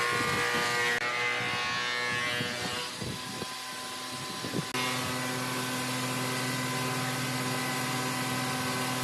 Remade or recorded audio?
recorded